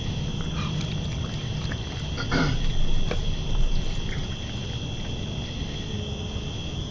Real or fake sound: real